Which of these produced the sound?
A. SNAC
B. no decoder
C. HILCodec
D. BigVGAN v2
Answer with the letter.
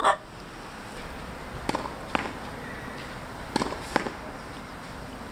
B